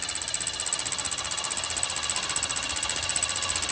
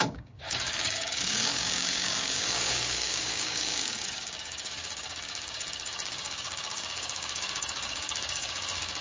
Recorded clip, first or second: first